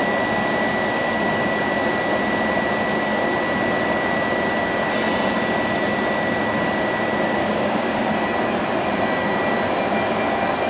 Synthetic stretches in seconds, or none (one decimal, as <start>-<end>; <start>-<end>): 7.4-8.0